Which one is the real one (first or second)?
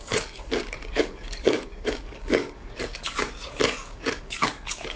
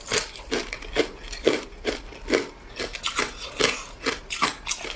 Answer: second